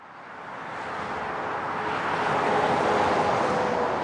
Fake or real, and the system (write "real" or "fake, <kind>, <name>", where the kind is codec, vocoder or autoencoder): real